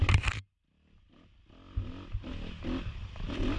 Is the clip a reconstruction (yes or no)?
no